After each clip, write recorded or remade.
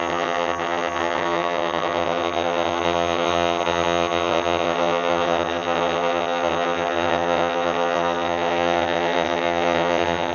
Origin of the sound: remade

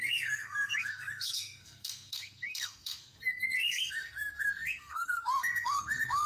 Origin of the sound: remade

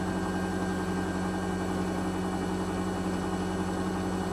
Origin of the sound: recorded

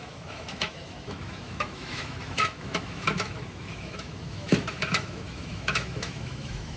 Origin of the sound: remade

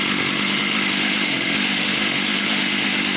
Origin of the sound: remade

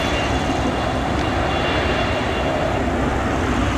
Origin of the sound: recorded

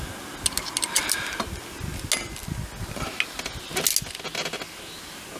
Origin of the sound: recorded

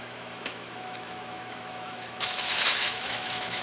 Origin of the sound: remade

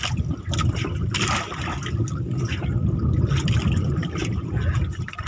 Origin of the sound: recorded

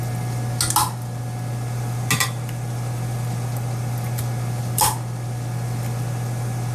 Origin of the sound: recorded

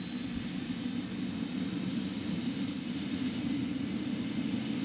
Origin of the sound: recorded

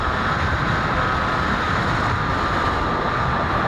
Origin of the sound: recorded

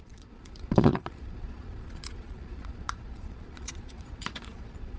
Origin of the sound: remade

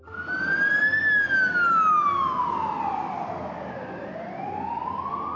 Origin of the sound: recorded